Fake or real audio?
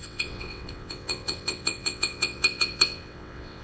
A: fake